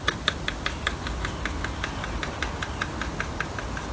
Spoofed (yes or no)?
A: no